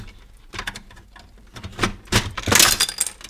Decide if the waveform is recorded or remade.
recorded